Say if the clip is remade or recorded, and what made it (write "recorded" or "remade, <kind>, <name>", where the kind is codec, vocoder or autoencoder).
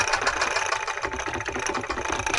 recorded